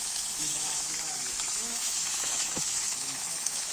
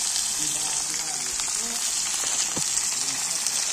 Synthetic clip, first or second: first